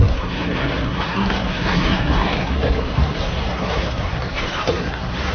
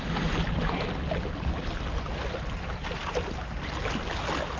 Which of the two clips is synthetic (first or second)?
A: first